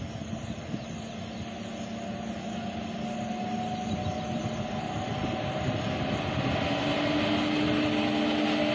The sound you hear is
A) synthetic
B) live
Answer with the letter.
B